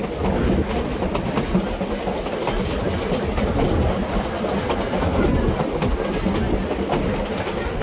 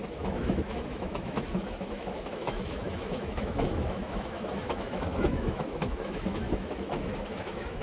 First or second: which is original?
first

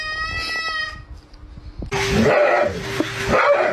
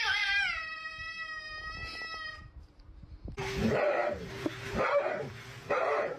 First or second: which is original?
first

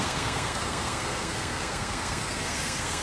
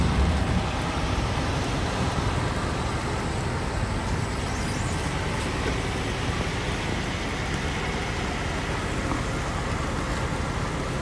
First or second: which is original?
second